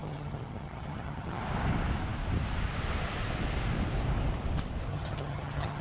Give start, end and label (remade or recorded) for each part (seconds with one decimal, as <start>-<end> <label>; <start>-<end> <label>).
0.0-1.4 remade; 1.4-4.9 recorded; 4.9-5.8 remade